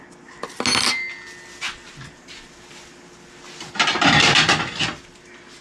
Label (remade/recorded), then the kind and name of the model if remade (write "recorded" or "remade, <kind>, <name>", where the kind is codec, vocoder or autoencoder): recorded